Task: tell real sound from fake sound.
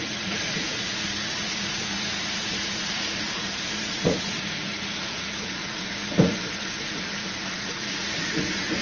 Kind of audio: fake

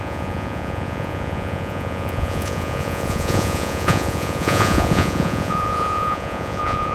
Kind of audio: fake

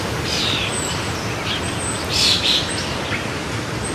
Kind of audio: real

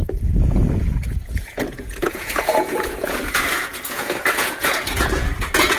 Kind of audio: fake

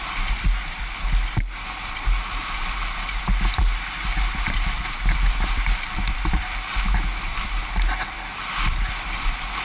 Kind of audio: real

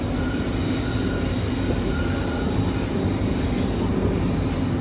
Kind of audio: real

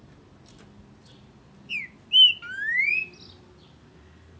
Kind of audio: real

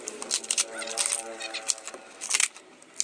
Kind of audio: real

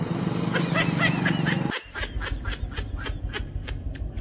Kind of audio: real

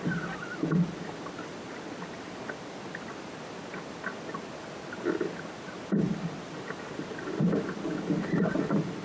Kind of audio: real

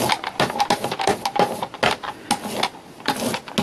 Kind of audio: real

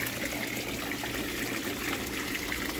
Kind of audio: real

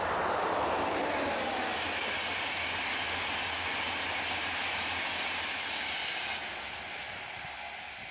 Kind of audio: real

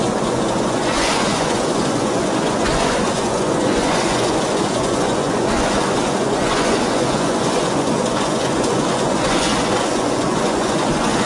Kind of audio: fake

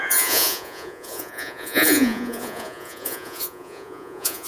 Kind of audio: fake